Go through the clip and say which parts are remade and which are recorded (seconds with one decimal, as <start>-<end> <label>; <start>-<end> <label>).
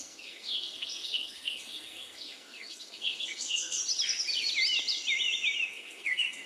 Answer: 0.0-3.8 remade; 3.8-5.7 recorded; 5.7-6.5 remade